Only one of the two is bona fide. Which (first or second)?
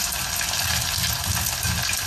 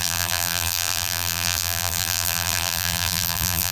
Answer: first